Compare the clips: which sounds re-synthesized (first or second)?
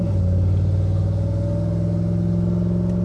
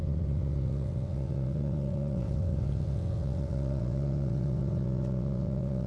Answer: second